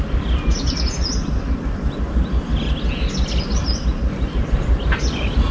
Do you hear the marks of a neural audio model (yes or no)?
no